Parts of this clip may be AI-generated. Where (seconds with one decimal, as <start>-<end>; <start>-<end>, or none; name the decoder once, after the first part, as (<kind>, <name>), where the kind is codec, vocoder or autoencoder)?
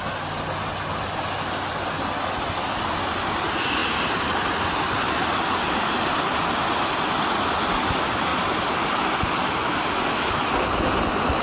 8.3-9.0 (vocoder, BigVGAN v2)